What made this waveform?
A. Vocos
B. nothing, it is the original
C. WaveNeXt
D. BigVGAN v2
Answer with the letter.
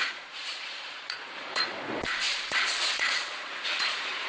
A